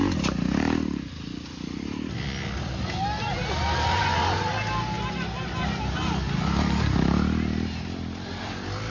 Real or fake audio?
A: real